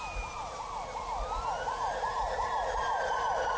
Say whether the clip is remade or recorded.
recorded